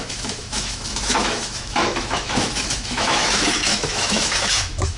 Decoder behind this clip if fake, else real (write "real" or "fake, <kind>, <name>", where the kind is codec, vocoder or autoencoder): fake, autoencoder, DAC-VAE